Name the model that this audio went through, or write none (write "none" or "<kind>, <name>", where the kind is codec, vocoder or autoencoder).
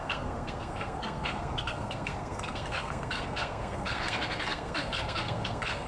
codec, SNAC